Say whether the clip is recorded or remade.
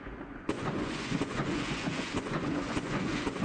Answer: remade